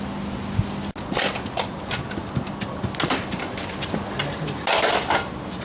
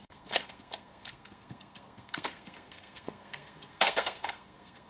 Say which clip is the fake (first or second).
second